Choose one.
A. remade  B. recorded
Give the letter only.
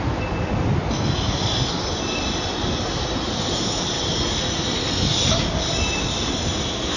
B